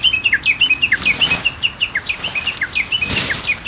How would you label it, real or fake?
real